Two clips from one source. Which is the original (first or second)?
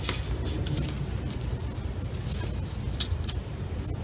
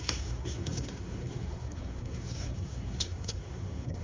first